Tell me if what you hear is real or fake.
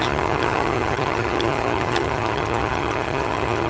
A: fake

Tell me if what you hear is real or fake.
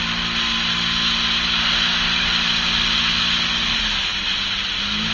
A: real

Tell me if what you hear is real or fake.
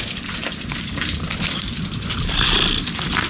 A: real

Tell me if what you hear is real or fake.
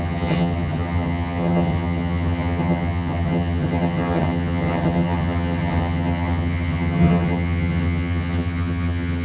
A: fake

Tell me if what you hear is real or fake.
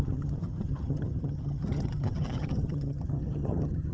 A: fake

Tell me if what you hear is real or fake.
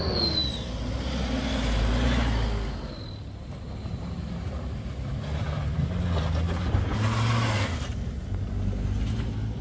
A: real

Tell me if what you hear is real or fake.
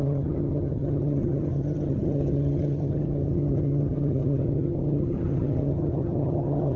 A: fake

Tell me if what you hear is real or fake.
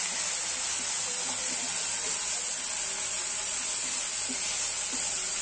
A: real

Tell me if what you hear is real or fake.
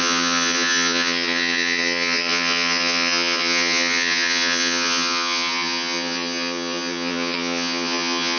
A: fake